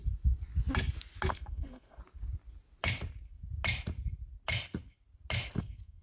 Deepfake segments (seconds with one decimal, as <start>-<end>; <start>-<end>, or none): 1.3-2.0; 5.6-6.0